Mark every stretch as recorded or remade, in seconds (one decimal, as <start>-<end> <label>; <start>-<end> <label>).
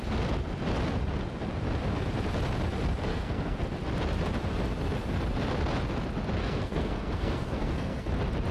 0.0-3.1 recorded; 3.1-3.6 remade; 3.6-6.4 recorded; 6.4-8.1 remade; 8.1-8.5 recorded